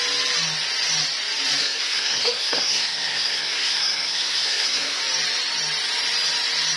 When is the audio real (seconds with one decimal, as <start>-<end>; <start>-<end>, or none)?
0.0-1.6; 5.0-6.8